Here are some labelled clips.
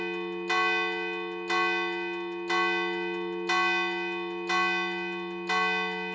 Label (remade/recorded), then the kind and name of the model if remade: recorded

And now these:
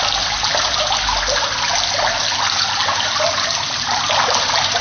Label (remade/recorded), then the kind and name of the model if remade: recorded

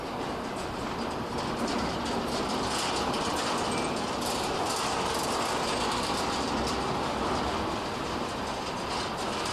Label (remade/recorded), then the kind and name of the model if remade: recorded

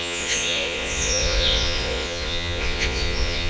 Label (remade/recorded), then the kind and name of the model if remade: remade, vocoder, Vocos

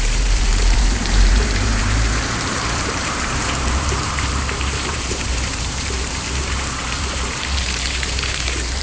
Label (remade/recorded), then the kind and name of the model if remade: remade, vocoder, BigVGAN v2